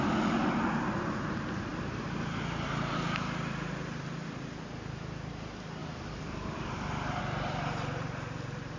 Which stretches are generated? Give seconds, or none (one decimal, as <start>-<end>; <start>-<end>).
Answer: 5.8-7.2